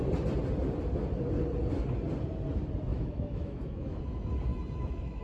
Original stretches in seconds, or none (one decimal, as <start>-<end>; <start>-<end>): 0.0-2.9; 4.0-4.5